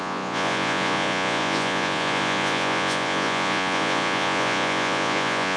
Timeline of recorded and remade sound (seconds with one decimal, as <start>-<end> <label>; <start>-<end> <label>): 0.0-5.6 remade